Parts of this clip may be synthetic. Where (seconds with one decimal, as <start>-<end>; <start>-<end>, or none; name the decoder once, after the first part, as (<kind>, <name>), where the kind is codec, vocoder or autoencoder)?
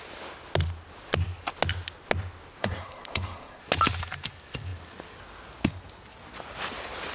2.6-3.6 (codec, SNAC)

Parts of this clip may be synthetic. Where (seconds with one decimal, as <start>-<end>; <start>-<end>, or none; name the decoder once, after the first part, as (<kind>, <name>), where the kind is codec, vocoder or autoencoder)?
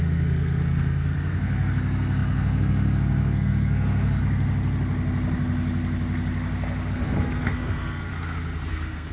0.0-4.2 (codec, SNAC); 6.9-8.1; 8.7-9.1